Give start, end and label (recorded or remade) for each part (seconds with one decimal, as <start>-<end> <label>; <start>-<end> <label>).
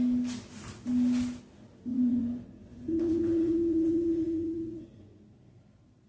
0.0-1.9 recorded; 1.9-5.1 remade; 5.1-6.1 recorded